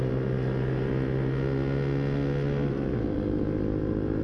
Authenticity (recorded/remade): recorded